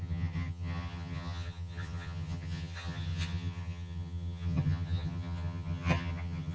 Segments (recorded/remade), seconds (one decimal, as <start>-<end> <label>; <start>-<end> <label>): 0.0-6.5 remade